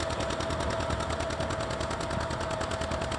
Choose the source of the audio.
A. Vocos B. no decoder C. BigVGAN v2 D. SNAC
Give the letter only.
B